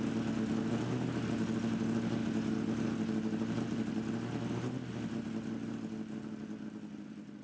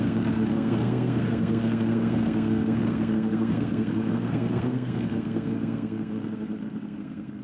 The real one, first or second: first